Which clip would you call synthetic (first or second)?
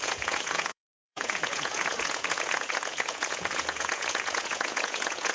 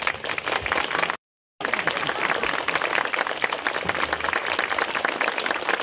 first